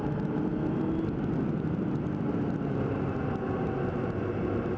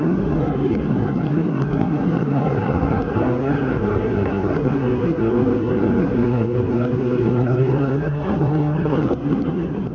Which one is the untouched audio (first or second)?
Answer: first